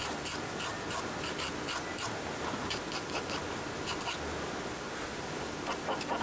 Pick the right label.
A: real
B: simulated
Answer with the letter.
A